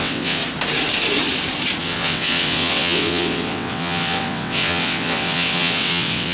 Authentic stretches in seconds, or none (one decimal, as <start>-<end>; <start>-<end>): 0.4-1.8